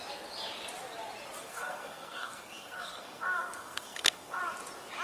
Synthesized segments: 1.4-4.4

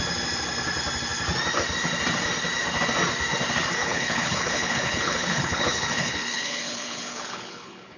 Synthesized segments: 3.8-8.0

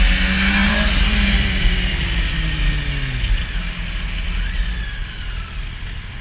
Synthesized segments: 0.6-1.9

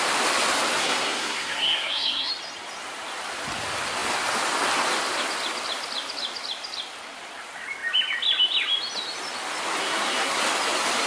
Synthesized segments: 0.8-2.3; 9.8-10.4

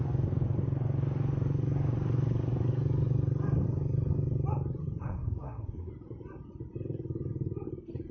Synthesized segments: 5.0-5.9

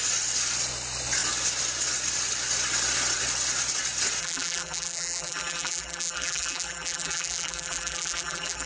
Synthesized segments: 4.2-8.7

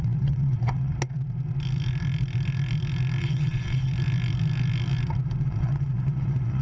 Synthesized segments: 0.0-0.9; 3.2-3.9; 5.4-6.6